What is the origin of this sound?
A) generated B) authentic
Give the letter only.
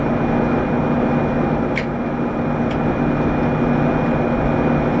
B